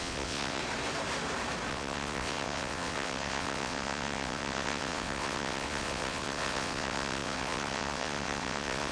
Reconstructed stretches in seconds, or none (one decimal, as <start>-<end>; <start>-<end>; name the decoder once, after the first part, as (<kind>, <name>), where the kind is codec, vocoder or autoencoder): 0.0-0.6 (vocoder, WaveNeXt); 1.7-8.9